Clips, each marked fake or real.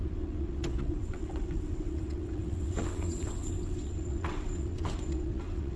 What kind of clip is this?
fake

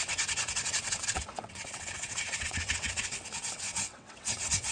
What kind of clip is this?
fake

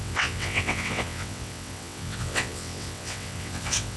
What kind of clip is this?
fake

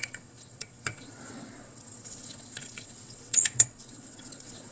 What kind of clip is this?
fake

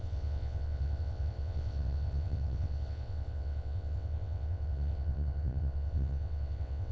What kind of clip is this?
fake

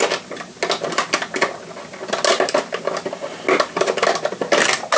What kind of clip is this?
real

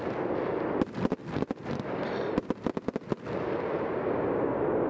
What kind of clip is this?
real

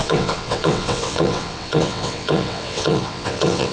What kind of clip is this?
fake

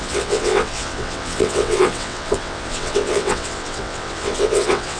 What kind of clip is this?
fake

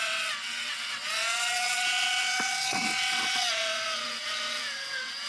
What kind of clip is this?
fake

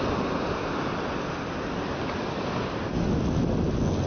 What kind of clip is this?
real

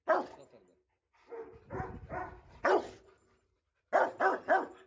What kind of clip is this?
real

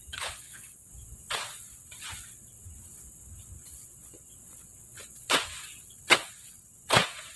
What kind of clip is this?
fake